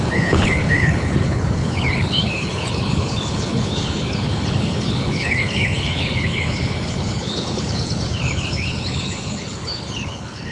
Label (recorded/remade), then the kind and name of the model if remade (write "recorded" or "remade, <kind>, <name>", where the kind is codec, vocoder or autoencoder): remade, codec, HILCodec